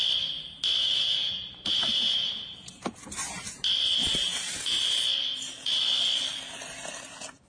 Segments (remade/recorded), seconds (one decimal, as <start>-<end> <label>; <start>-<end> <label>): 0.0-0.8 recorded; 0.8-2.9 remade; 2.9-4.0 recorded; 4.0-4.8 remade; 4.8-5.3 recorded; 5.3-5.8 remade; 5.8-7.5 recorded